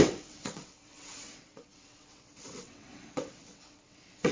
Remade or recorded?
remade